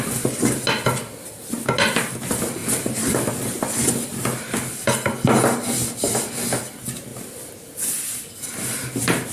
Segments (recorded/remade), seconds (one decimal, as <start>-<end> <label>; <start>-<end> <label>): 0.0-2.6 recorded; 2.6-3.3 remade; 3.3-7.1 recorded; 7.1-9.3 remade

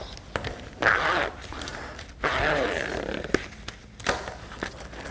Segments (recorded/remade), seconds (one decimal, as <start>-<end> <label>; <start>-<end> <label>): 0.0-5.1 recorded

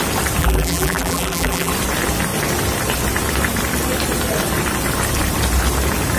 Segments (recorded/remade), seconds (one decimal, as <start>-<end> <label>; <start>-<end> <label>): 0.0-0.4 recorded; 0.4-1.7 remade; 1.7-6.2 recorded